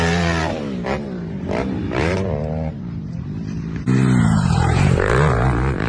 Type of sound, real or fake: fake